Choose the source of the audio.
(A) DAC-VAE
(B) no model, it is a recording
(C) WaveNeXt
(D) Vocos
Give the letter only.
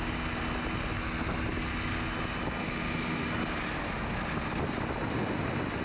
B